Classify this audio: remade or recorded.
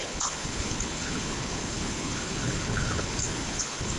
remade